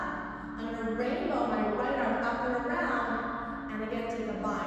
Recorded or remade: recorded